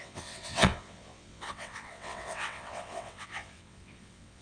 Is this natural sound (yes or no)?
no